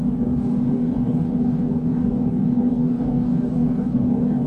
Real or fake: fake